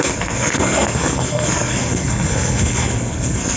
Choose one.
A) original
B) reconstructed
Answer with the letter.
B